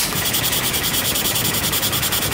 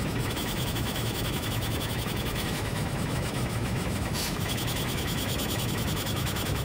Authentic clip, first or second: first